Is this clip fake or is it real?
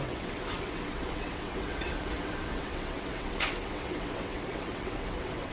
fake